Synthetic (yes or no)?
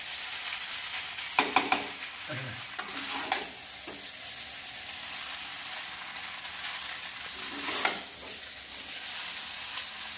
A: no